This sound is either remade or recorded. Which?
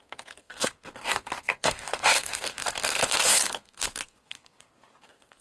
remade